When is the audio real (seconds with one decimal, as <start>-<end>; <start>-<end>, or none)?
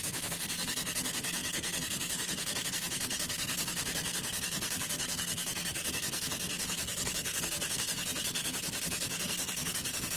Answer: none